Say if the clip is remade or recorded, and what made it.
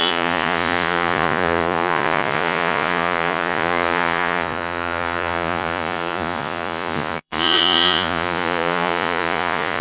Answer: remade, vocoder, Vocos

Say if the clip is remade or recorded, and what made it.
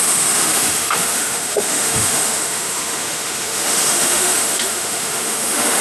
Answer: remade, autoencoder, DAC-VAE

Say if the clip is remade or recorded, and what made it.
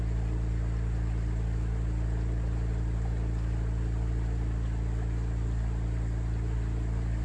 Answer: recorded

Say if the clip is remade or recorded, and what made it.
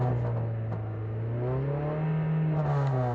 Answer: recorded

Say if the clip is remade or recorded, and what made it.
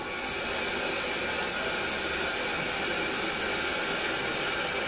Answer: recorded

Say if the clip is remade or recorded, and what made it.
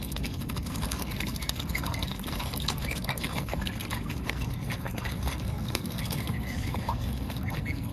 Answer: remade, codec, SNAC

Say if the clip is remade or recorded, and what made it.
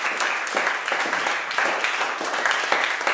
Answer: recorded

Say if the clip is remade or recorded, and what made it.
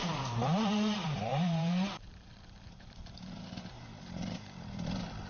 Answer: remade, vocoder, BigVGAN v2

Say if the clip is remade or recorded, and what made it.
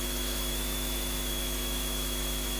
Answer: remade, autoencoder, DAC-VAE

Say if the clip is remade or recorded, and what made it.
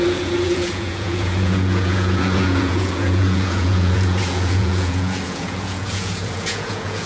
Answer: remade, vocoder, Vocos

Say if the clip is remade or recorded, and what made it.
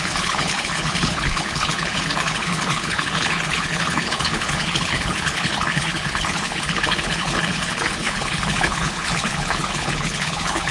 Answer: remade, codec, HILCodec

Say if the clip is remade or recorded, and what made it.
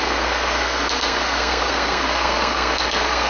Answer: remade, codec, SNAC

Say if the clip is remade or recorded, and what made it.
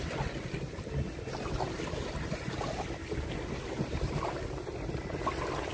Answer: recorded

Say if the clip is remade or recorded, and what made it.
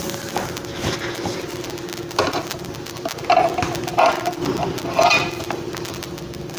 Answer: recorded